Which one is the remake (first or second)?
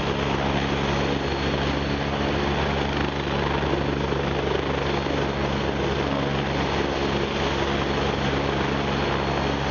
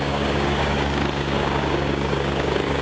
second